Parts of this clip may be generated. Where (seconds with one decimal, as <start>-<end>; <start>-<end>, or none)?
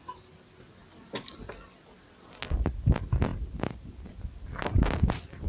none